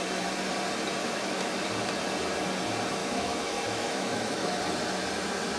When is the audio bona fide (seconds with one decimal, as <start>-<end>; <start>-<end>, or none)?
0.0-1.0; 1.5-3.0; 4.6-5.6